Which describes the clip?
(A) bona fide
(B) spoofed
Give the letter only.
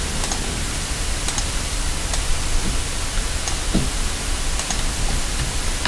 A